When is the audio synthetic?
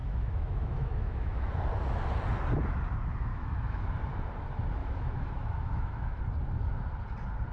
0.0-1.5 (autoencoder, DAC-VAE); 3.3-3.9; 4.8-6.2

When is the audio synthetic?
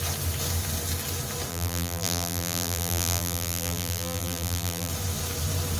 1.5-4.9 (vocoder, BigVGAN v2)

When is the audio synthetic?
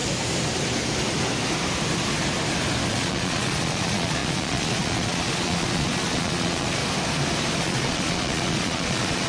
2.9-6.8 (vocoder, Vocos); 7.6-9.3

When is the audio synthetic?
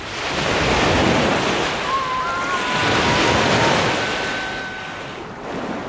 none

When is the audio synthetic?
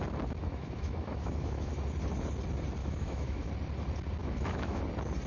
0.4-1.7 (autoencoder, DAC-VAE); 2.8-3.5; 4.2-4.8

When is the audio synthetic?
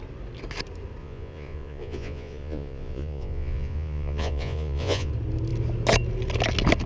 1.0-5.1 (vocoder, Vocos)